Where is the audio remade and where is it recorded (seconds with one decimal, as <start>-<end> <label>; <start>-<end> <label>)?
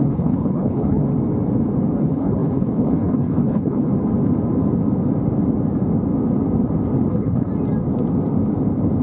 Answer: 0.0-1.0 remade; 1.0-2.0 recorded; 2.0-3.9 remade; 3.9-7.1 recorded; 7.1-7.5 remade; 7.5-9.0 recorded